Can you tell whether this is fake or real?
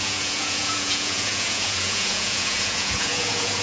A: fake